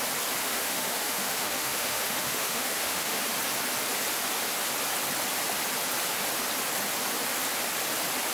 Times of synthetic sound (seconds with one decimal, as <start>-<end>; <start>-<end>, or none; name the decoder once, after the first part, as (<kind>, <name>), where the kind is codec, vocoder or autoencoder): 0.4-3.2 (autoencoder, DAC-VAE)